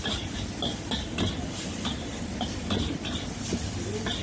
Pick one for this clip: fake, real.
real